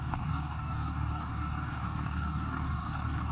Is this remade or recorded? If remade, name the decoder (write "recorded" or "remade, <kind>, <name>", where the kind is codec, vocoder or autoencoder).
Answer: remade, codec, DAC